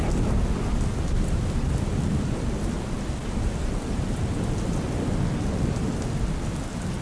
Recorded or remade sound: recorded